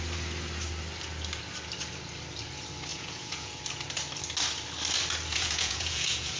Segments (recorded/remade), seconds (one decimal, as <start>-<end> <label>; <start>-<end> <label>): 0.0-2.9 recorded; 2.9-3.6 remade; 3.6-5.3 recorded; 5.3-6.4 remade